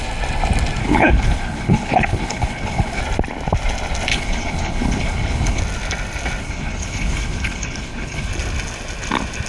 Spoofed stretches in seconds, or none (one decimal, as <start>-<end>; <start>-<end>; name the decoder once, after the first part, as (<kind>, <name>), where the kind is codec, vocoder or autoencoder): 0.8-3.0 (codec, HILCodec); 4.1-5.6; 6.4-8.3